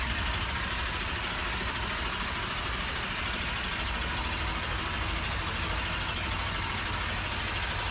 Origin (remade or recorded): recorded